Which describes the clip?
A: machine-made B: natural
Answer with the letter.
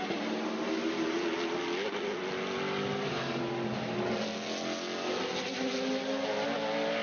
B